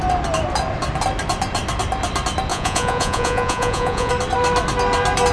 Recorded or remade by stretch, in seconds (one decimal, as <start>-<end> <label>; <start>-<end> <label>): 0.0-2.5 recorded; 2.5-4.1 remade; 4.1-5.3 recorded